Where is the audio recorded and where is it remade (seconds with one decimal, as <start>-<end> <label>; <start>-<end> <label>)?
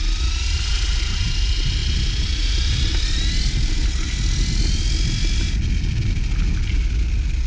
0.0-7.5 recorded